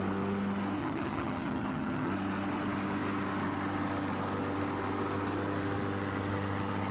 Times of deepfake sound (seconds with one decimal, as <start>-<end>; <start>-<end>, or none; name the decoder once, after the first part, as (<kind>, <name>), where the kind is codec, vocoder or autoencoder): 0.8-2.1 (vocoder, HiFi-GAN)